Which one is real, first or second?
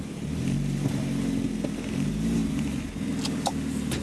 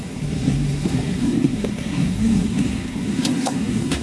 first